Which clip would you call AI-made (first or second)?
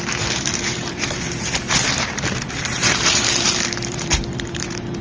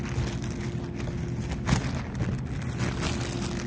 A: first